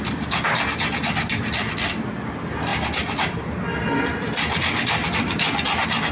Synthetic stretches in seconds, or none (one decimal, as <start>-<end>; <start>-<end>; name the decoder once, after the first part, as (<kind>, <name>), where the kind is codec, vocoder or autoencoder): none